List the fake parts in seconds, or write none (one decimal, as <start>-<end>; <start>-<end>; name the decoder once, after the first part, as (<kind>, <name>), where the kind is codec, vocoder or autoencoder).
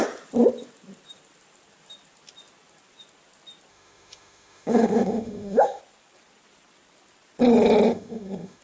3.7-5.8 (autoencoder, DAC-VAE); 7.9-8.6